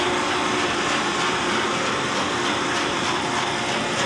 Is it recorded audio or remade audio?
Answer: recorded